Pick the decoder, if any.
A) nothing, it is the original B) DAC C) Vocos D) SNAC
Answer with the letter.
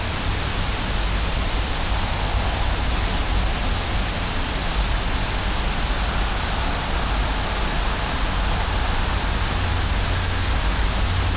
A